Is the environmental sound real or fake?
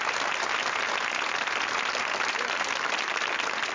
real